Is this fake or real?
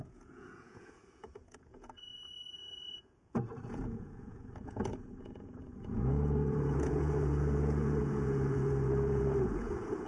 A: fake